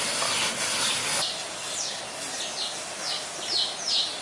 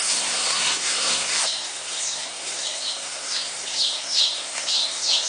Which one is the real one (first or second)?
first